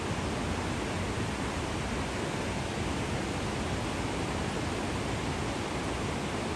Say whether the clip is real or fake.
real